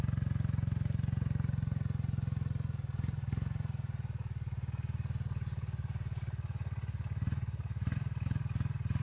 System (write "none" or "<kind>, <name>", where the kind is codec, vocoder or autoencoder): none